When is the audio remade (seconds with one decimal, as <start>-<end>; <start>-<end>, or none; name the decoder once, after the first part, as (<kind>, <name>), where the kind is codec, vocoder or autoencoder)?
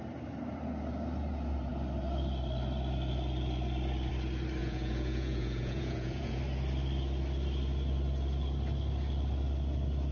4.6-6.4 (vocoder, Vocos)